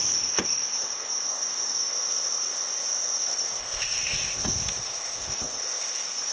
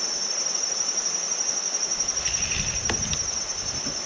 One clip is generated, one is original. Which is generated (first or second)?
first